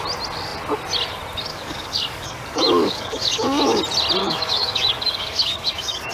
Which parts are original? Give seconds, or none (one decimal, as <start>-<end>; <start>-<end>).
0.0-1.5; 3.8-4.2